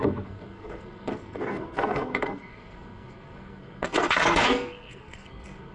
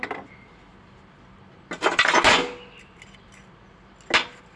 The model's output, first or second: first